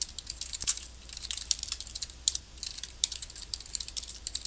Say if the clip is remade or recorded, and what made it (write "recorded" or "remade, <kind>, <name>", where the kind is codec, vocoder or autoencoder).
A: remade, vocoder, BigVGAN v2